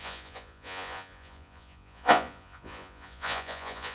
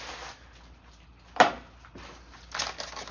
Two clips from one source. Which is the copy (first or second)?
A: first